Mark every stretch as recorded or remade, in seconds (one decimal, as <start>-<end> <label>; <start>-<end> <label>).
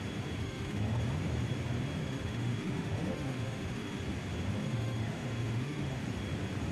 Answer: 0.0-0.4 recorded; 0.4-1.0 remade; 1.0-2.0 recorded; 2.0-4.0 remade; 4.0-4.6 recorded; 4.6-6.0 remade; 6.0-6.7 recorded